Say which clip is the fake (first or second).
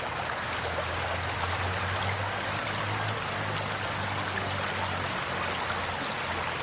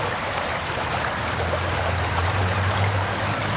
second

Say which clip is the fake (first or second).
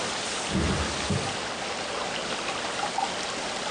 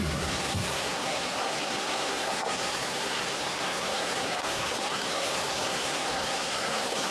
second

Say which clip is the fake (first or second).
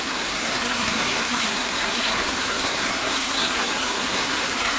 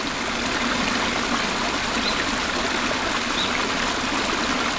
first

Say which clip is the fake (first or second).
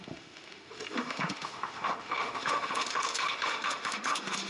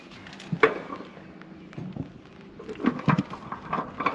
first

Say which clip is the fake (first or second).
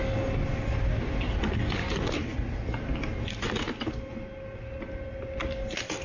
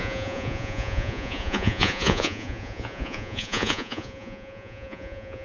second